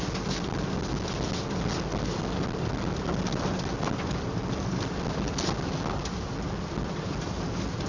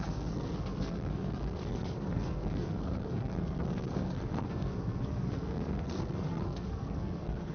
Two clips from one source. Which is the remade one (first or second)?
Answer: second